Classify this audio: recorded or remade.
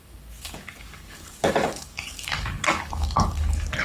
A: remade